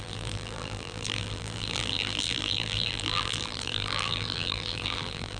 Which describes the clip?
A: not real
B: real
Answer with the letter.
A